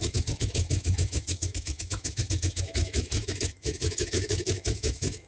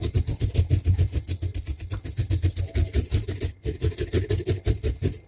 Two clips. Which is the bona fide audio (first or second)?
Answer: second